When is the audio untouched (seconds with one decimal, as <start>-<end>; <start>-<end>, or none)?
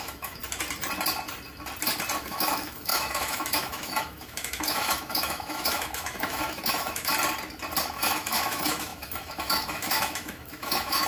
0.4-2.2; 7.1-7.8